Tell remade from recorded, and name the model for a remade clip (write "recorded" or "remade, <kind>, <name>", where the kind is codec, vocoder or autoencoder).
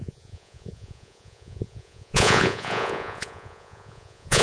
remade, vocoder, Vocos